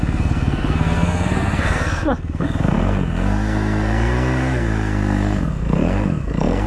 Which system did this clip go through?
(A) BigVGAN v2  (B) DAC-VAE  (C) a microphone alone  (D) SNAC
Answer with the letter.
D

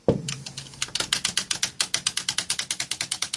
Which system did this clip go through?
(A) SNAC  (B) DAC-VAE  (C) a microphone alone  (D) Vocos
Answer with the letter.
C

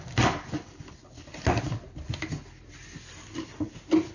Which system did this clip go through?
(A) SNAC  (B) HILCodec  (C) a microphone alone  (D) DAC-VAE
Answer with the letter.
C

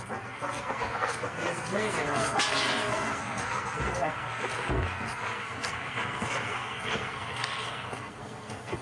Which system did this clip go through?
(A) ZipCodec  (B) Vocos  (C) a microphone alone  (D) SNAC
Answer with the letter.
D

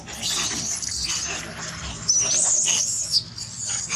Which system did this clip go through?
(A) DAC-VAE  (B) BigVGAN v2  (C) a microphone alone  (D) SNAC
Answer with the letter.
C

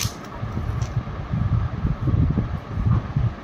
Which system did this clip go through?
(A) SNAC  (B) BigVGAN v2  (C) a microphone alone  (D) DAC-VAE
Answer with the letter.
C